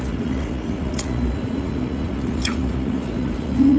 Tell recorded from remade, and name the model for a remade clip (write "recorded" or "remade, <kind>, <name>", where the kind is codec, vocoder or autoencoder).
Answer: remade, vocoder, Vocos